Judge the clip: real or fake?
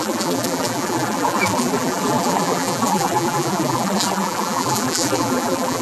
fake